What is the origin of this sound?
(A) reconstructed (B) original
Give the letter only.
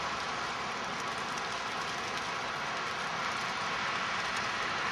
B